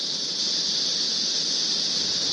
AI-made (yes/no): no